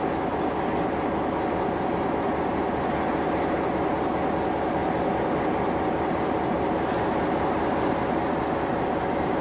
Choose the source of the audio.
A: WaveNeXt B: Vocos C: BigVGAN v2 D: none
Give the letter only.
D